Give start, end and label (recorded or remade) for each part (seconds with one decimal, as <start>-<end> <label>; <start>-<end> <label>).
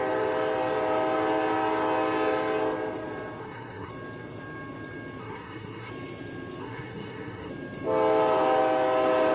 0.0-3.4 recorded; 3.4-3.9 remade; 3.9-5.2 recorded; 5.2-5.9 remade; 5.9-6.6 recorded; 6.6-7.5 remade; 7.5-9.3 recorded